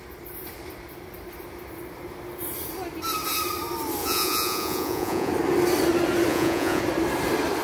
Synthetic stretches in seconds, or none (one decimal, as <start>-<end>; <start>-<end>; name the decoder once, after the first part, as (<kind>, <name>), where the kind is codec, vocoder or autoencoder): 4.0-5.3 (vocoder, Vocos); 6.3-6.8

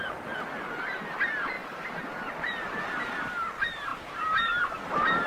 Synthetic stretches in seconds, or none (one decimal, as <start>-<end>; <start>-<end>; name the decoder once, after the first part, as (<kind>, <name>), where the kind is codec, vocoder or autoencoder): 3.9-4.8 (vocoder, BigVGAN v2)